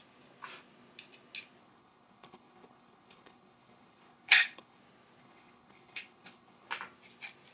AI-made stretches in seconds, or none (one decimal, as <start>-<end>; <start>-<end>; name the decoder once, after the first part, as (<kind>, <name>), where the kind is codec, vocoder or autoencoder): 1.6-4.8 (codec, HILCodec); 5.2-6.7

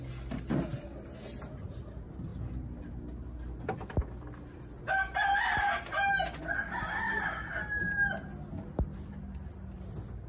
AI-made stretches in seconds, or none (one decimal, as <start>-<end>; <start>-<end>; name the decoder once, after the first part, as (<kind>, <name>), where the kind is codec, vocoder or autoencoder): none

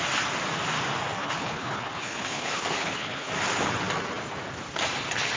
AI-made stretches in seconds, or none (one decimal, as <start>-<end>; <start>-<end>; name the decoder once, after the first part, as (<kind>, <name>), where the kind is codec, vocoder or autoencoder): 1.2-3.3 (codec, HILCodec)

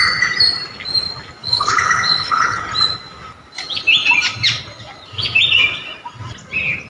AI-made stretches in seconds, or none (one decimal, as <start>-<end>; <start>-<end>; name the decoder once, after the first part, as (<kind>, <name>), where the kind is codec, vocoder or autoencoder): 1.4-2.6 (codec, HILCodec)

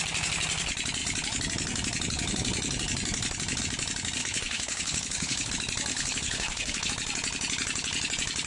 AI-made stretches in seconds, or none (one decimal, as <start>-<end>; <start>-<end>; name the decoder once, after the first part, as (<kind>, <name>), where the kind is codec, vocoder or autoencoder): 4.2-5.5 (codec, HILCodec); 5.9-6.9

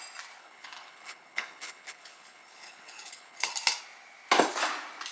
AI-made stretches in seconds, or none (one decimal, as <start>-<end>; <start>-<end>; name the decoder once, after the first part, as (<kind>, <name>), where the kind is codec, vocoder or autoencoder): 0.4-3.5 (codec, HILCodec)

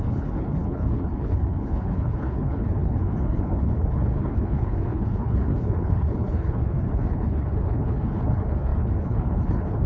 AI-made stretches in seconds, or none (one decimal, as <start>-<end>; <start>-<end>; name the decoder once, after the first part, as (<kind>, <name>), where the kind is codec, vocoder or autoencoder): 0.0-9.9 (codec, HILCodec)